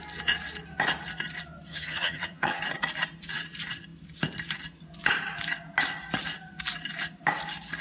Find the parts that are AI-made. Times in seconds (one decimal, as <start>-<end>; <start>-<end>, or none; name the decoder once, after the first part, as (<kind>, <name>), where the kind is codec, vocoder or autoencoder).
1.7-2.6 (vocoder, HiFi-GAN)